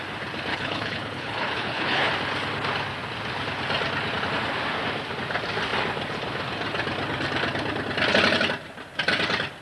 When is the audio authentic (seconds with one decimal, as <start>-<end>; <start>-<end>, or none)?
0.0-0.5; 2.1-9.6